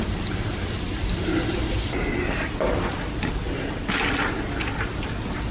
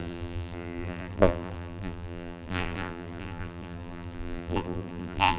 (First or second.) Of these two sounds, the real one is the first